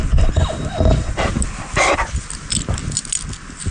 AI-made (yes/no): no